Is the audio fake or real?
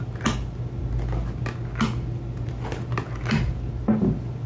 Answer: real